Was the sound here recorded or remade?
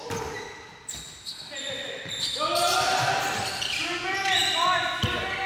recorded